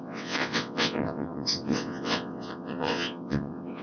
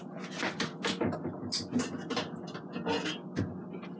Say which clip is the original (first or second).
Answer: second